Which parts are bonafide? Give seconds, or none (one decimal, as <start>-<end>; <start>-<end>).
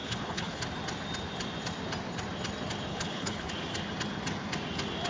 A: 0.6-2.9; 3.5-5.1